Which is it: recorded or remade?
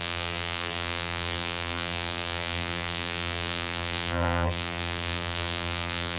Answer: remade